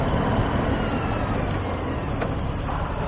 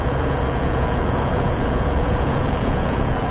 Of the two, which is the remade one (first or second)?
second